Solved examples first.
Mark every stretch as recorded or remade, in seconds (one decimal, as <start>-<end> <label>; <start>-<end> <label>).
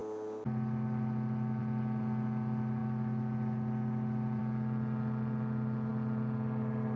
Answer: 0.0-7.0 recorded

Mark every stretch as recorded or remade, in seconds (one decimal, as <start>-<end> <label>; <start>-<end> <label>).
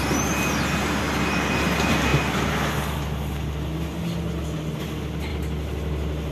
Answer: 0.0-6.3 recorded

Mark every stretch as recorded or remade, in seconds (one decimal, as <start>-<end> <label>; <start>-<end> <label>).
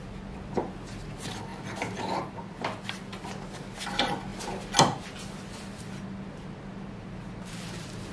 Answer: 0.0-8.1 recorded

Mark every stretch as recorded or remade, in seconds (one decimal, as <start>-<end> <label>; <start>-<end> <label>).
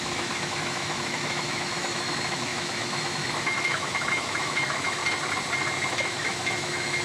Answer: 0.0-5.0 remade; 5.0-5.9 recorded; 5.9-7.0 remade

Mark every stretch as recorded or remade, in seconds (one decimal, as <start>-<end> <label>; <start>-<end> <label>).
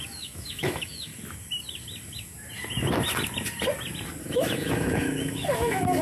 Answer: 0.0-1.1 remade; 1.1-4.2 recorded; 4.2-6.0 remade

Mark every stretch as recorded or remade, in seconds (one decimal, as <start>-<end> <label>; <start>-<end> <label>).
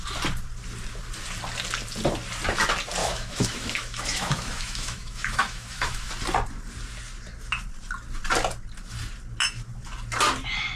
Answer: 0.0-3.0 recorded; 3.0-6.1 remade; 6.1-10.8 recorded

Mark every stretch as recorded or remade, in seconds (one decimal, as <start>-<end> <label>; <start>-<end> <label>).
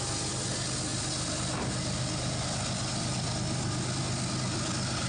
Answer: 0.0-5.1 recorded